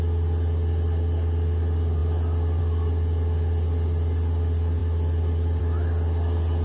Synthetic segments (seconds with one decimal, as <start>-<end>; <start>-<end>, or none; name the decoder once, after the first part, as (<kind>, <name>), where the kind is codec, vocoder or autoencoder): none